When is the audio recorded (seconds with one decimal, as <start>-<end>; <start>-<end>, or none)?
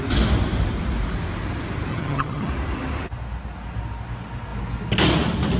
0.0-1.9; 2.5-5.6